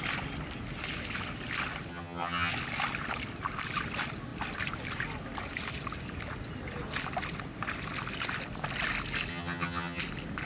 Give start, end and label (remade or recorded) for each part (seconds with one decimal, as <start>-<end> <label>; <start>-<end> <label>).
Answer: 0.0-1.9 recorded; 1.9-2.5 remade; 2.5-9.3 recorded; 9.3-10.0 remade; 10.0-10.5 recorded